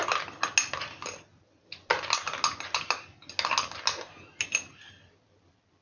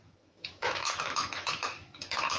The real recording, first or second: first